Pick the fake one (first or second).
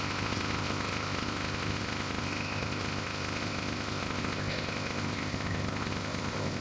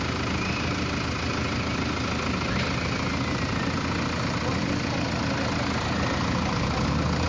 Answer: first